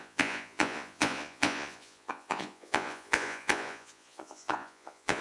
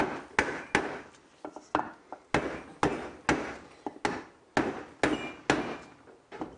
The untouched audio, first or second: second